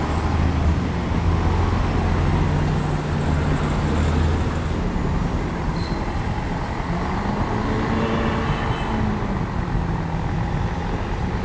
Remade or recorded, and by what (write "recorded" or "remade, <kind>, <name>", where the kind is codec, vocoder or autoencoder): recorded